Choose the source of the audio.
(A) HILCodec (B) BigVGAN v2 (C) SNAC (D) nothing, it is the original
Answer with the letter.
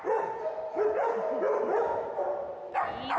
D